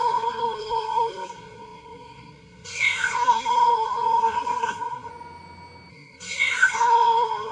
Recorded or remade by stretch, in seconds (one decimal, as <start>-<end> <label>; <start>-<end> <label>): 0.0-5.1 remade; 5.1-5.9 recorded; 5.9-7.5 remade